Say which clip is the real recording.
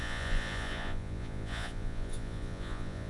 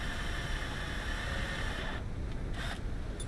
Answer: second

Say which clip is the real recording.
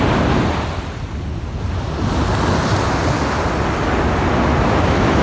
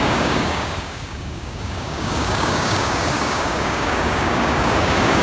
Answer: first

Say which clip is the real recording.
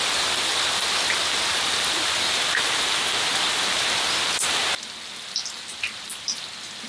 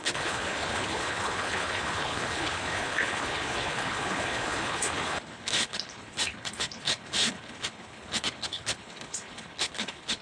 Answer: first